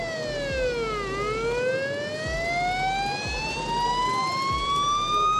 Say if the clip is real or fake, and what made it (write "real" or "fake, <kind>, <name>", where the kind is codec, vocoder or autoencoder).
real